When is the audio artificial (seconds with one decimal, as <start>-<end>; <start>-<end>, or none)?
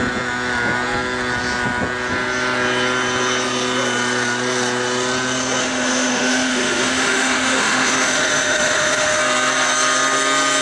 5.6-9.2